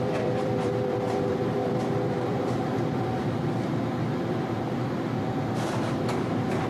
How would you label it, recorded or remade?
remade